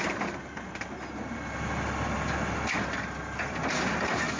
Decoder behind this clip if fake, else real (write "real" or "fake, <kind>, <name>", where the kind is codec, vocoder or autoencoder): real